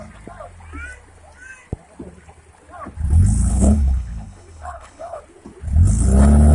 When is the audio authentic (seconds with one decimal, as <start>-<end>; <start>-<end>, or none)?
0.0-3.5; 5.2-6.5